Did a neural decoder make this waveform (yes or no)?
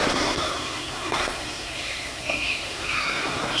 yes